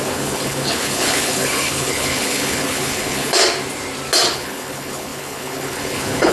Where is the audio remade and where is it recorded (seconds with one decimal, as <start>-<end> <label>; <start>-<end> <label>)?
0.0-3.4 remade; 3.4-4.3 recorded; 4.3-6.3 remade

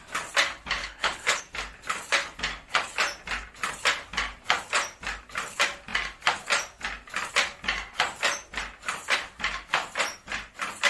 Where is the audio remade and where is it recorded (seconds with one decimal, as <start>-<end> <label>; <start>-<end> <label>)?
0.0-0.8 recorded; 0.8-1.4 remade; 1.4-10.9 recorded

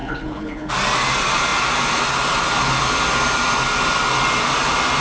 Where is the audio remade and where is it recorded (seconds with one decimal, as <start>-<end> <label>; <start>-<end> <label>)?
0.0-0.7 remade; 0.7-5.0 recorded